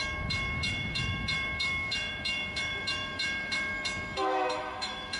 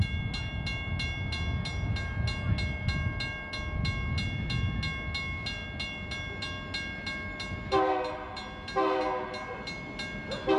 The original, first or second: second